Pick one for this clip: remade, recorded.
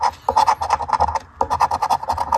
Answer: recorded